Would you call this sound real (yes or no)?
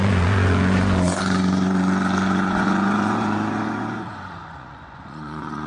no